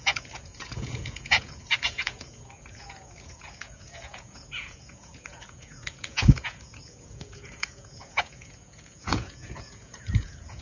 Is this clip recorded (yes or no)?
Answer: no